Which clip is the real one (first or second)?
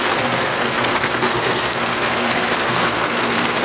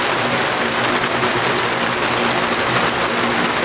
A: second